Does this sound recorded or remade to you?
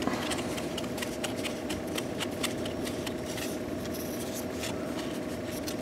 recorded